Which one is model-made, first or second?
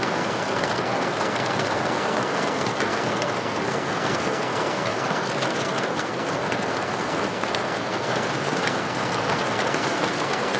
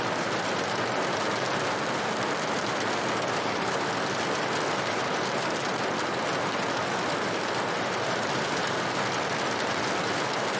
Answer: first